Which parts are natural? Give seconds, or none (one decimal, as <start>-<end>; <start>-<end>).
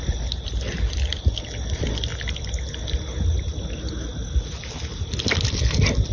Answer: 0.0-6.1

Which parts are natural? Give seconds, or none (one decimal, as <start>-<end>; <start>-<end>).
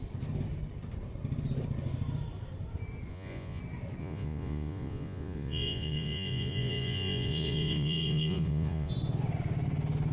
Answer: 0.0-3.1; 3.6-4.0; 8.9-10.1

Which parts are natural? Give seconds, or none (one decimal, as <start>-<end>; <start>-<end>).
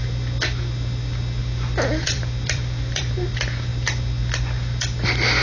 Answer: 0.0-1.4; 3.1-5.4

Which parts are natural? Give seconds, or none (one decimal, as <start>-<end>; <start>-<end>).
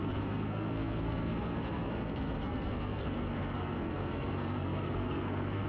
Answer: none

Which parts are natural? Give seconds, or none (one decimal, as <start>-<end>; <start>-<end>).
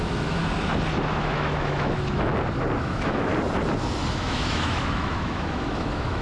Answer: 0.4-1.2; 2.3-2.8; 3.3-4.1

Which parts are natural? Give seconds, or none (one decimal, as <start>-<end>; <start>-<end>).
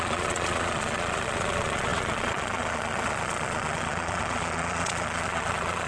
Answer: none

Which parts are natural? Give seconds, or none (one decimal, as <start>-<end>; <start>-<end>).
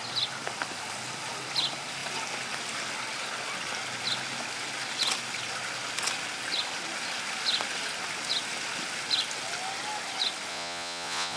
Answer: 0.0-10.5